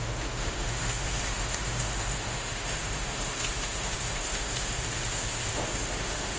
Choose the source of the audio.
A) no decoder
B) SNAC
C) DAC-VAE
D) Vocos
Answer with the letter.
C